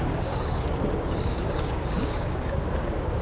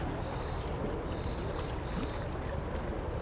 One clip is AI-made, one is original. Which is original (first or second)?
second